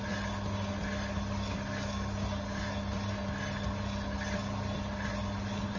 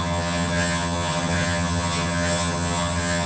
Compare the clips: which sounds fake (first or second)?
second